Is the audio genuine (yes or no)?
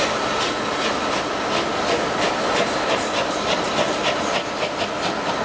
yes